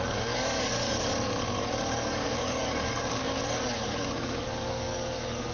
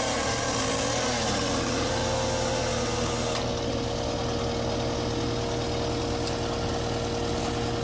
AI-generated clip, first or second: first